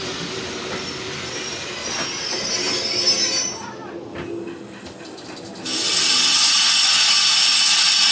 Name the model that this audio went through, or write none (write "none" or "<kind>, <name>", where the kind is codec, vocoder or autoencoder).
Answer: none